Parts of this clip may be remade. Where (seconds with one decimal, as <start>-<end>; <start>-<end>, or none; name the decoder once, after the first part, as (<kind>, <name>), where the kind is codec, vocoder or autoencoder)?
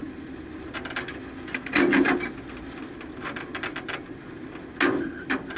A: none